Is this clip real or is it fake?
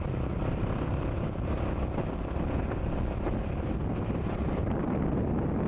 real